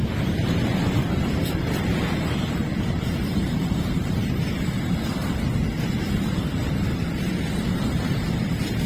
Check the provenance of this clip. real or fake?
fake